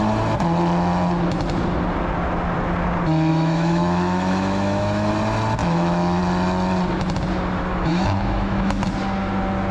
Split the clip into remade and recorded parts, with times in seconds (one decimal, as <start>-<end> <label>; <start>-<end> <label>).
0.0-3.3 recorded; 3.3-5.1 remade; 5.1-5.6 recorded; 5.6-6.2 remade; 6.2-7.7 recorded; 7.7-8.8 remade; 8.8-9.7 recorded